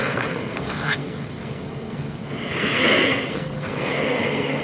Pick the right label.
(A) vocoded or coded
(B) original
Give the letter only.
A